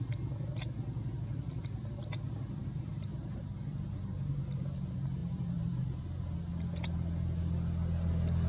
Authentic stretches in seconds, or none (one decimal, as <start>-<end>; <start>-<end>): 0.0-2.6; 3.4-5.2; 5.8-8.5